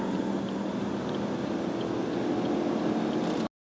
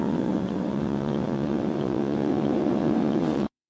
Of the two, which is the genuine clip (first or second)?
first